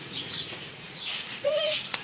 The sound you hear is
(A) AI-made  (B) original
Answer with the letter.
A